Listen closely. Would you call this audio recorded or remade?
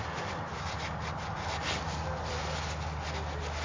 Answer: recorded